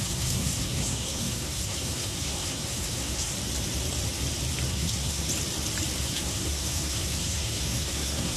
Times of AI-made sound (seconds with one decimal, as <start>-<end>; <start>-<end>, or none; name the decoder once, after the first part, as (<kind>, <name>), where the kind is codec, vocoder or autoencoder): 0.0-3.3 (codec, SNAC); 4.7-5.3; 6.0-8.4